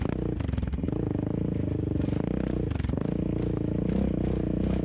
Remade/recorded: recorded